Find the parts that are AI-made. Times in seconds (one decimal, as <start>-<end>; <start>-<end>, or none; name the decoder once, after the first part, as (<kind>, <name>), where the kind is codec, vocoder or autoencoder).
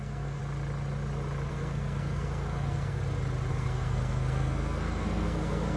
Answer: 0.0-0.4 (codec, SNAC); 1.5-3.0; 3.5-5.8